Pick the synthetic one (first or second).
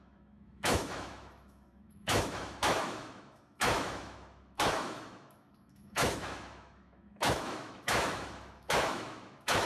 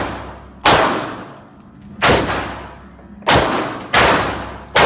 first